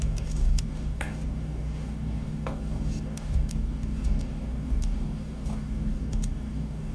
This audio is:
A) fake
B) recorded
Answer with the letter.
A